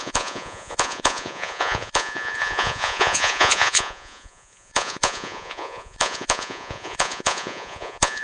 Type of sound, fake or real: fake